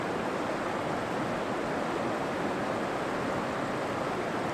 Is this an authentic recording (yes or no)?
yes